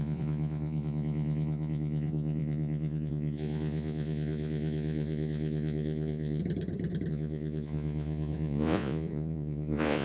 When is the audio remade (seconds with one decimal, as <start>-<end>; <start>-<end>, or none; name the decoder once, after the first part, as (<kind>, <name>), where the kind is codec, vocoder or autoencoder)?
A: 0.0-6.4 (vocoder, Vocos); 7.1-10.0